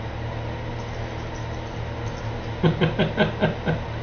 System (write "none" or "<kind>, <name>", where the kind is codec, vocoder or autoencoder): none